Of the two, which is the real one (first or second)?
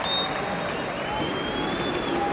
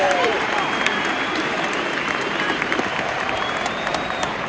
first